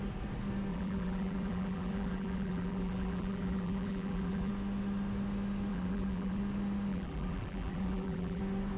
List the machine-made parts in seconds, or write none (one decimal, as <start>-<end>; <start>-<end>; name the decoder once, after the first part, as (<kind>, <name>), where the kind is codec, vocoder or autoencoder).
0.7-4.5 (vocoder, BigVGAN v2); 5.7-6.4; 6.9-8.4